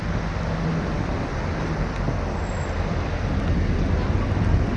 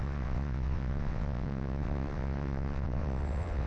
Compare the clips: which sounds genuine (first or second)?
first